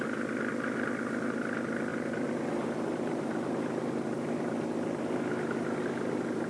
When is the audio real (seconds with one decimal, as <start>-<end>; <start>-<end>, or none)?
0.0-1.9; 5.1-6.5